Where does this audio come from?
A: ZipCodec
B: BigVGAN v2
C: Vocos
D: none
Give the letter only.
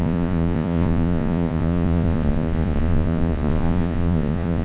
C